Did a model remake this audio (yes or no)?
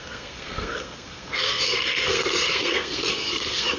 yes